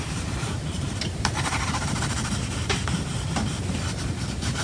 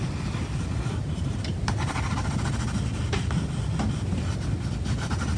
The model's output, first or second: first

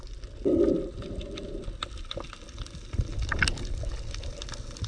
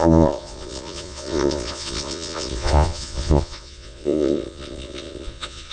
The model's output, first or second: second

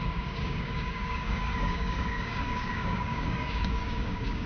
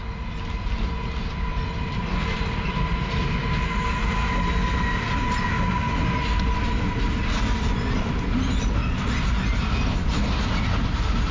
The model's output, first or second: first